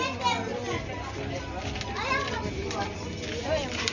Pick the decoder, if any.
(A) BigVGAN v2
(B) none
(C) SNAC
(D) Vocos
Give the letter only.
B